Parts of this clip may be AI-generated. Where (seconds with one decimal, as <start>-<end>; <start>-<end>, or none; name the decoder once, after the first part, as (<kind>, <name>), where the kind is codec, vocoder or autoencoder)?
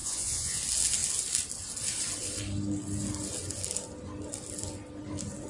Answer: 0.0-0.6 (vocoder, Vocos)